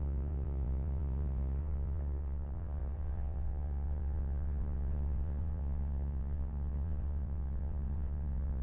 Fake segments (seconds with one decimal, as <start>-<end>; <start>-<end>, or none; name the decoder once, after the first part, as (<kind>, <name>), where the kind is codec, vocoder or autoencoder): 0.0-8.6 (vocoder, WaveNeXt)